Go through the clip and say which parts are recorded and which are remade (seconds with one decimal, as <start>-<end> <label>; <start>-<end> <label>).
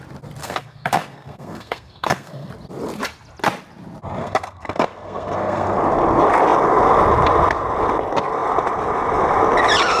0.0-0.4 recorded; 0.4-2.5 remade; 2.5-4.2 recorded; 4.2-5.8 remade; 5.8-10.0 recorded